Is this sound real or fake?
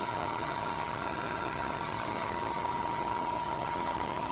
fake